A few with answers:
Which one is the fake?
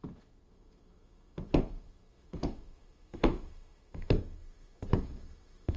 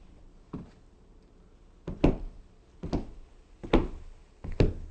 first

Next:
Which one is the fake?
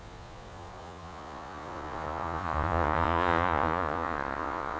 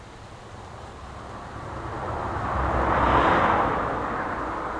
first